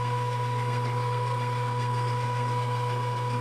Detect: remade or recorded remade